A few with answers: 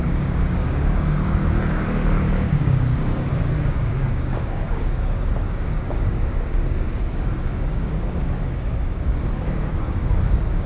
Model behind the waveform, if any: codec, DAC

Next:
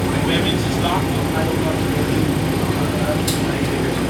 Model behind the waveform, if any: none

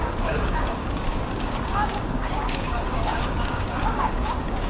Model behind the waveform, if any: codec, DAC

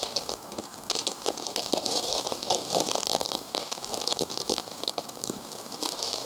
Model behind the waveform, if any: codec, DAC